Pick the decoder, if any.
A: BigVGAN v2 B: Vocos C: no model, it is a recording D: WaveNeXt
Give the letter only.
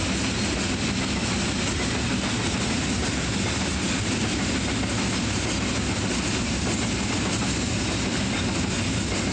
C